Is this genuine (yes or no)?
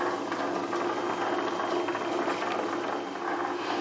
yes